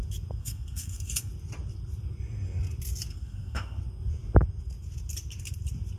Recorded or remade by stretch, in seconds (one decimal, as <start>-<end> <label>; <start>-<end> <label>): 0.0-0.4 recorded; 0.4-1.3 remade; 1.3-3.1 recorded; 3.1-3.8 remade; 3.8-6.0 recorded